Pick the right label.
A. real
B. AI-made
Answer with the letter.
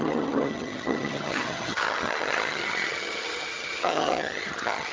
B